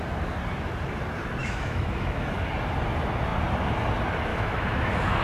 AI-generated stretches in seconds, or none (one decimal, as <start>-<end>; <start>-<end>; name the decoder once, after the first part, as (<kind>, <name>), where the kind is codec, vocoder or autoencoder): 1.4-2.5 (autoencoder, DAC-VAE); 4.3-5.2